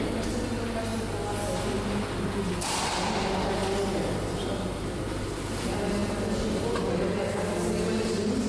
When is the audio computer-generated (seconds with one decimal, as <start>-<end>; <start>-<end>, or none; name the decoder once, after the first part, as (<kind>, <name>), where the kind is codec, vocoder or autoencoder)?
none